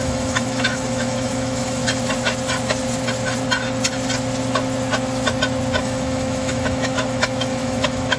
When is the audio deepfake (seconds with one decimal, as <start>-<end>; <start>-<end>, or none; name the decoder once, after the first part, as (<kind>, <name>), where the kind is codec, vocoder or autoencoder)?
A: 0.0-1.8 (autoencoder, DAC-VAE); 5.8-8.2